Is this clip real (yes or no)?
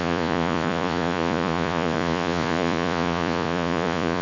no